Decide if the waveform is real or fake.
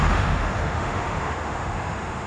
fake